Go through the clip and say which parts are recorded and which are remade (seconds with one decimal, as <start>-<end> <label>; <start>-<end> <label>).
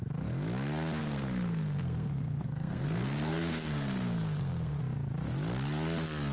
0.0-1.0 recorded; 1.0-4.8 remade; 4.8-6.3 recorded